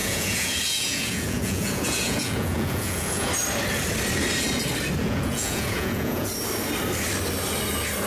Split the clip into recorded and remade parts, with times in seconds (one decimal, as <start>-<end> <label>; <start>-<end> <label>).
0.0-3.3 remade; 3.3-5.0 recorded; 5.0-6.3 remade; 6.3-8.1 recorded